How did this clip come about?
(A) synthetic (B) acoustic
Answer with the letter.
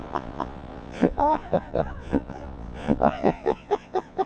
A